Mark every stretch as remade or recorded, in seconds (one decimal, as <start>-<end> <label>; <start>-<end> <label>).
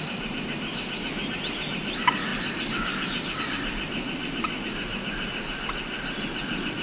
0.0-6.8 recorded